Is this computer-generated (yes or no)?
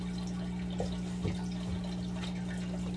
no